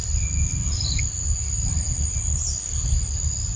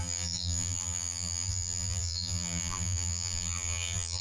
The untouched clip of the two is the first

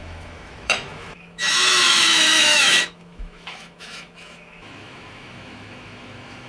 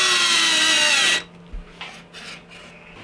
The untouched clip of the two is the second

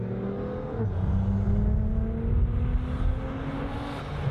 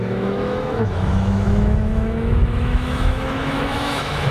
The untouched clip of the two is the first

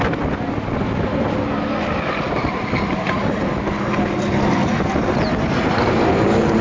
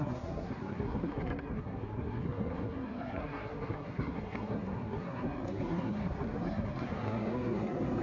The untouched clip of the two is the first